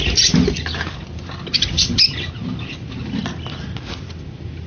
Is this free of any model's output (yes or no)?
yes